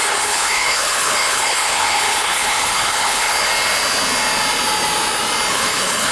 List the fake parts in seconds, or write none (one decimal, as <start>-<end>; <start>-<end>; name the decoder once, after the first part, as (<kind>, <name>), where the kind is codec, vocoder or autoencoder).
0.0-3.5 (codec, HILCodec); 5.5-6.1